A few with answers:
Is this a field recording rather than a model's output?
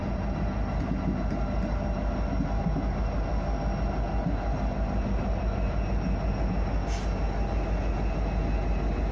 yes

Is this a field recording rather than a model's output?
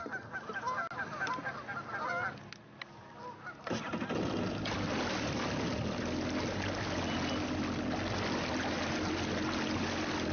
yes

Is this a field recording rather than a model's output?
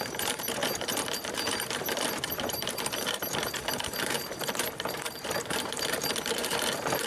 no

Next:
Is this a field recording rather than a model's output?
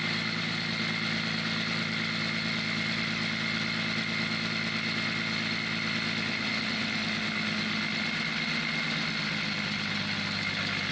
yes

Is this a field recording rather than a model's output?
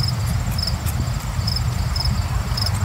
yes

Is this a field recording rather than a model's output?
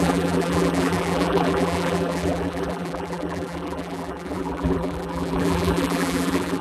no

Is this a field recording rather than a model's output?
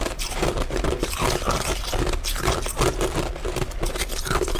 yes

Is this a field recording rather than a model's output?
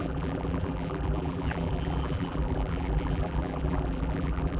no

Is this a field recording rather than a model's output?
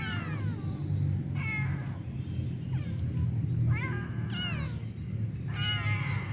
yes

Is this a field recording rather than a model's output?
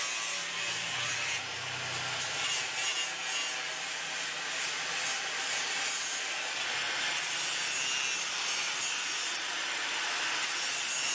yes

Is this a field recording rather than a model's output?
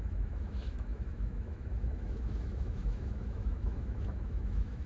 no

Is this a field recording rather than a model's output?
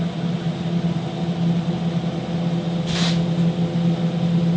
yes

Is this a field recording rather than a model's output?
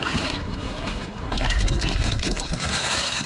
no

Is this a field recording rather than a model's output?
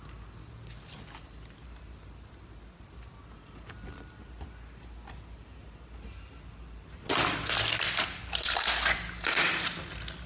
yes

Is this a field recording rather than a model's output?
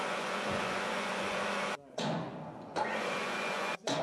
no